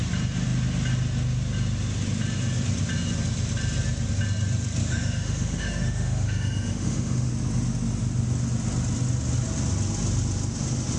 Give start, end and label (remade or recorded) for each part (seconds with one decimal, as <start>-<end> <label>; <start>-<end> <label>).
0.0-4.8 recorded; 4.8-7.3 remade; 7.3-11.0 recorded